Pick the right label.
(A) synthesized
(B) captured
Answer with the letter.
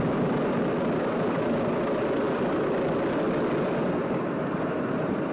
B